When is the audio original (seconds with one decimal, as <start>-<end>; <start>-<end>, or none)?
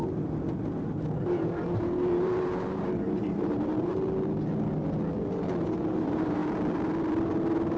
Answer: 0.0-0.8; 3.9-5.6; 6.4-7.8